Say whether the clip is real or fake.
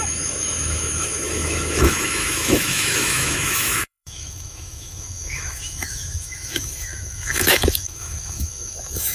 fake